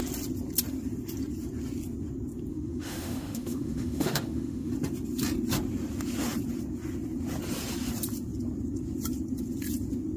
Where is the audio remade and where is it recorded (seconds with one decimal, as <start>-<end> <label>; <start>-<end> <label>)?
0.0-2.5 recorded; 2.5-4.7 remade; 4.7-10.2 recorded